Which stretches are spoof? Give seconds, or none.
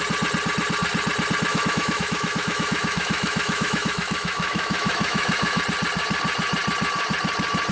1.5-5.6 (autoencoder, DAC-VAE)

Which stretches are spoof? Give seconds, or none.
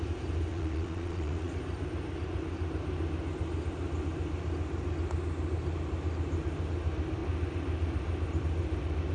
0.5-1.5 (vocoder, Vocos)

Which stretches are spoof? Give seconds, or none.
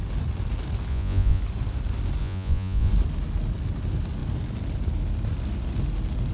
0.9-1.4 (vocoder, Vocos); 2.2-2.9